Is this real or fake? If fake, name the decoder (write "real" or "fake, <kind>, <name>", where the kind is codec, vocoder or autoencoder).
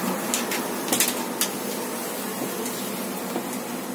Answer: real